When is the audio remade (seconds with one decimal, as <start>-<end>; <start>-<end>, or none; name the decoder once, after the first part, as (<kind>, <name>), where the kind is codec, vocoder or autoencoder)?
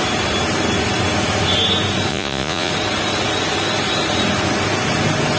2.1-2.7 (vocoder, Vocos)